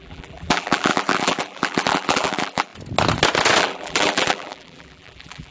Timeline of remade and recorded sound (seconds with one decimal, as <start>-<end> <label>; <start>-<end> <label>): 0.0-2.7 remade; 2.7-3.6 recorded; 3.6-5.5 remade